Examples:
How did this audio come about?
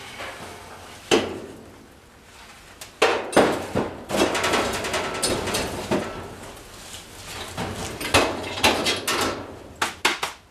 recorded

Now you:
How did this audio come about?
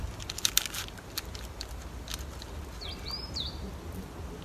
recorded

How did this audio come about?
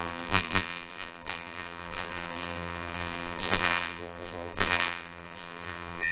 remade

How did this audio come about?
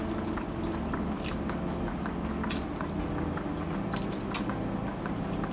recorded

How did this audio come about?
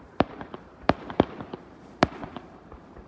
remade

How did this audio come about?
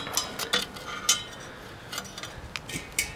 recorded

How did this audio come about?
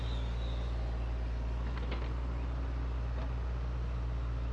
recorded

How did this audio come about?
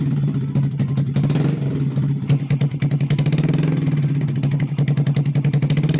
recorded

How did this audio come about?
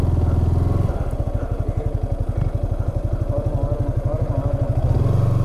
recorded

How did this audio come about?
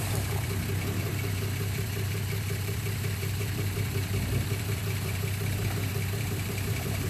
remade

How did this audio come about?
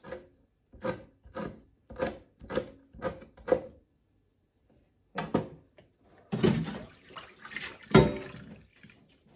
recorded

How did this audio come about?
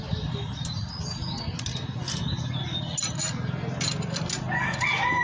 recorded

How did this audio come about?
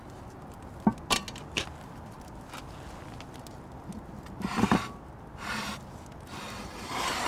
recorded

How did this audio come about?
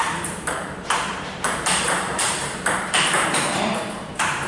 remade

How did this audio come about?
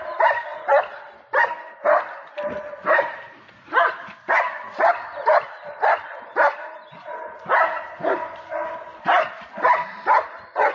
remade